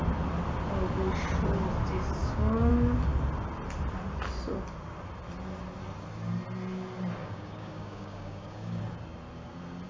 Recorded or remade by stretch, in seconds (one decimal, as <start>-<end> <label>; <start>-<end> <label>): 0.0-2.2 recorded; 2.2-2.7 remade; 2.7-7.2 recorded; 7.2-8.8 remade; 8.8-9.9 recorded